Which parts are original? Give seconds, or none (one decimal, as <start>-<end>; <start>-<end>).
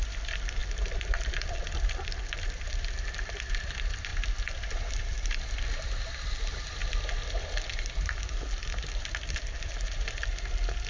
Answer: none